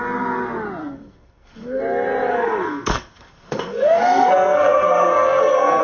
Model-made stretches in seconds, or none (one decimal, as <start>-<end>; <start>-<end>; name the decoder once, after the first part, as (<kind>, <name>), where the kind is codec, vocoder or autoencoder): 0.8-1.8 (codec, SNAC); 2.3-5.8